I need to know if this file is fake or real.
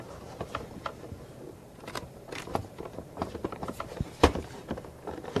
fake